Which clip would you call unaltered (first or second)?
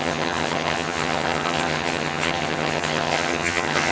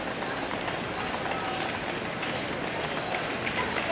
second